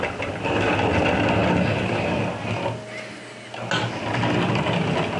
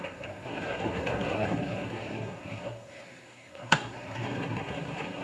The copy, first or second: second